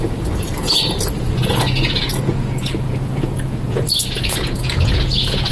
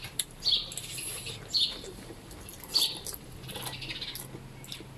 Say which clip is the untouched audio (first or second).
second